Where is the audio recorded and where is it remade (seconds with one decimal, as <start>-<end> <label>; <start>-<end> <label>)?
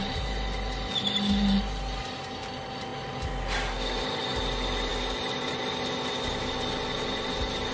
0.0-7.7 recorded